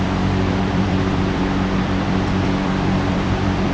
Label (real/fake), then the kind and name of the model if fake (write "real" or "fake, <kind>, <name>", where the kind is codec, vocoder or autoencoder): fake, vocoder, BigVGAN v2